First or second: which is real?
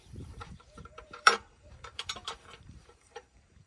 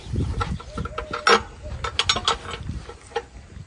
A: second